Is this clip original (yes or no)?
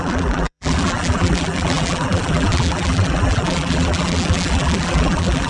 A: no